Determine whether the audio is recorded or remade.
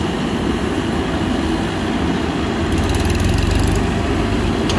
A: recorded